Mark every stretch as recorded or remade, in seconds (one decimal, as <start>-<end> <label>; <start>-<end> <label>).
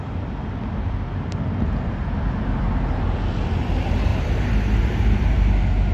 0.0-4.1 recorded; 4.1-5.4 remade; 5.4-5.9 recorded